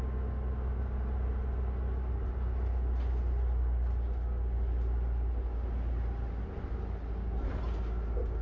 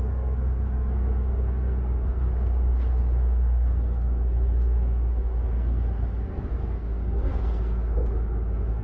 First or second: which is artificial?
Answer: second